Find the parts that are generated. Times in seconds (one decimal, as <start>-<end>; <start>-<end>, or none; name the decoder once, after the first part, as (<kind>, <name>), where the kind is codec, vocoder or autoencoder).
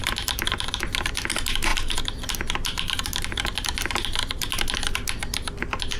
none